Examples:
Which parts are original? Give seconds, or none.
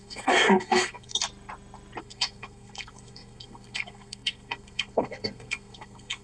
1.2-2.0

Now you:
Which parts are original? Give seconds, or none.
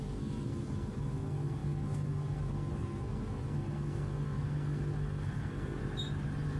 5.8-6.6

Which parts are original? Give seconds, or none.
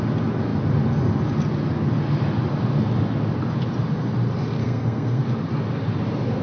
0.0-4.6; 5.2-6.4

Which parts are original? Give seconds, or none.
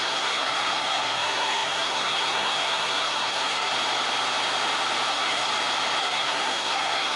3.7-5.1; 5.5-6.0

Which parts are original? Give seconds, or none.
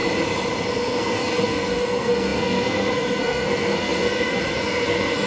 0.0-0.7